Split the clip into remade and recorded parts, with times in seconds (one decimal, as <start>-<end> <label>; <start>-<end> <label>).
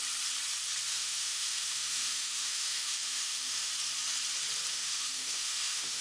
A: 0.0-0.9 recorded; 0.9-3.7 remade; 3.7-4.7 recorded; 4.7-6.0 remade